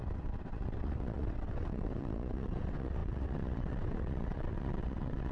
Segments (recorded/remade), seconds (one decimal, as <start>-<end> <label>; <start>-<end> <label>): 0.0-5.3 remade